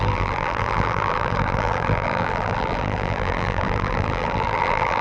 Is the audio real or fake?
fake